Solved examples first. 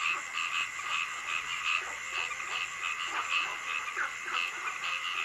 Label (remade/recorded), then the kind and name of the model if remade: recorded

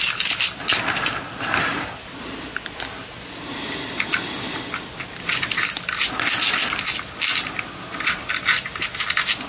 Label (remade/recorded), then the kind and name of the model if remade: recorded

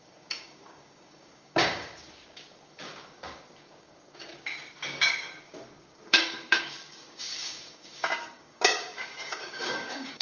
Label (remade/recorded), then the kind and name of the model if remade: remade, codec, DAC